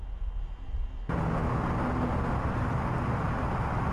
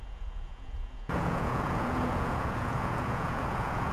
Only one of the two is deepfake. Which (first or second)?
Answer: second